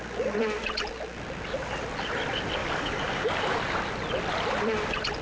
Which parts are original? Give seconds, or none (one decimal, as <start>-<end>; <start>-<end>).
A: 0.0-2.6; 3.6-5.2